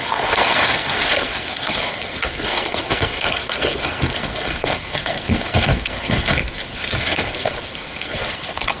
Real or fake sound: fake